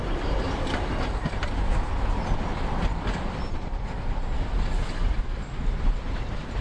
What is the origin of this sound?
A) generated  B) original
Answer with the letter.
B